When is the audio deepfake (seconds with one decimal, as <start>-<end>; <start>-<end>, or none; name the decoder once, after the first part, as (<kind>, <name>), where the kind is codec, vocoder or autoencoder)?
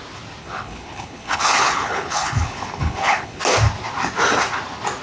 0.4-3.4 (codec, HILCodec)